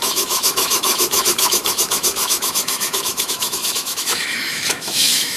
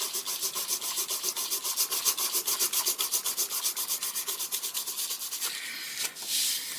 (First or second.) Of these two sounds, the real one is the second